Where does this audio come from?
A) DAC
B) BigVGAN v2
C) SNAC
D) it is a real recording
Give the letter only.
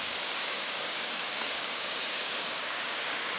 A